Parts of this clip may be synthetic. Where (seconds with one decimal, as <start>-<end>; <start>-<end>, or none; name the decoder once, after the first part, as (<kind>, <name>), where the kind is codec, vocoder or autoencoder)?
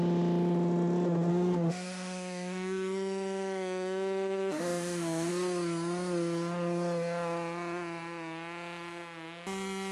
1.3-5.3 (autoencoder, DAC-VAE)